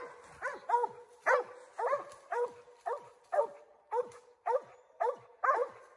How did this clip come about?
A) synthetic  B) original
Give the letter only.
B